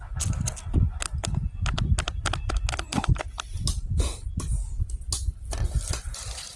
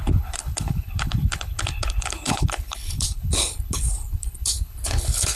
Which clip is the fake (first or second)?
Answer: second